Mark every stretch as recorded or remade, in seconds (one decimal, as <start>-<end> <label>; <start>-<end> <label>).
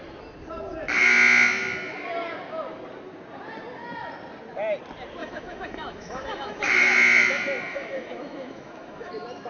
0.0-5.2 recorded; 5.2-6.7 remade; 6.7-7.7 recorded; 7.7-9.1 remade; 9.1-9.5 recorded